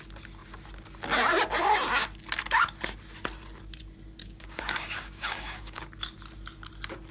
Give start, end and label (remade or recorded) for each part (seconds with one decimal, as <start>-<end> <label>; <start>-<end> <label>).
0.0-4.2 recorded; 4.2-5.8 remade; 5.8-7.1 recorded